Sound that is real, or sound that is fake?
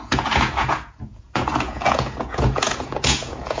fake